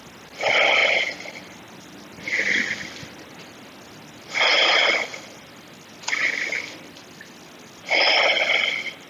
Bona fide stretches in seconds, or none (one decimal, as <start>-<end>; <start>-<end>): 0.0-9.1